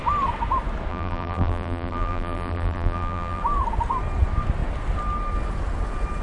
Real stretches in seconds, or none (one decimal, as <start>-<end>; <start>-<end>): 0.0-0.9; 3.4-6.2